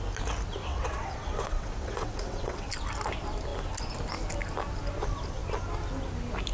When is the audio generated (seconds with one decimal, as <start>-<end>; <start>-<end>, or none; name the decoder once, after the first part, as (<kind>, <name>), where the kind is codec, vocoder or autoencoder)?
0.6-2.7 (vocoder, WaveNeXt)

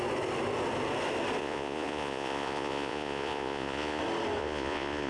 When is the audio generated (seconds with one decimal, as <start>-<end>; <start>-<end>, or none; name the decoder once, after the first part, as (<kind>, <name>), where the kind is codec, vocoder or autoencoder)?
1.4-4.0 (vocoder, Vocos); 4.4-5.1

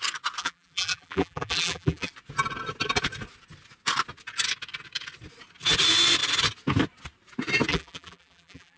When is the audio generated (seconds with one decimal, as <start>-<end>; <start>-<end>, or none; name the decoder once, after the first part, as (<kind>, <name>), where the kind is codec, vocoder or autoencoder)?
0.4-2.1 (vocoder, BigVGAN v2); 7.7-8.8

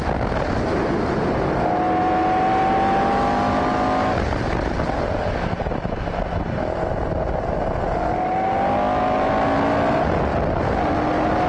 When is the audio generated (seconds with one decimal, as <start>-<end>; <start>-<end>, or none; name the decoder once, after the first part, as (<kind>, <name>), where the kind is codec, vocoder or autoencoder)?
none

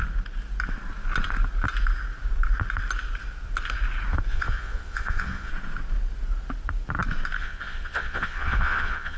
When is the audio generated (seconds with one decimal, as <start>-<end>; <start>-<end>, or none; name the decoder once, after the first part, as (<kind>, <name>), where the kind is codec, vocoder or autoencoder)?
4.3-5.5 (vocoder, Vocos); 7.4-9.2

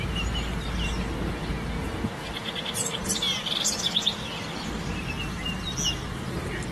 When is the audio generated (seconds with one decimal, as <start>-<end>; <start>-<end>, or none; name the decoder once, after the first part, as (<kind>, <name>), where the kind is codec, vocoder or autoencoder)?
none

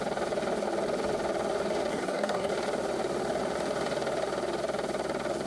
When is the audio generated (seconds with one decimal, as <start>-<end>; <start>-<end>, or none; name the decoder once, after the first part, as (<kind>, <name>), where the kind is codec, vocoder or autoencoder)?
1.9-2.5 (codec, SNAC)